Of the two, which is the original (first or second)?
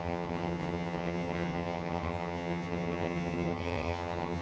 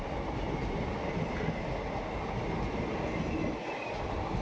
second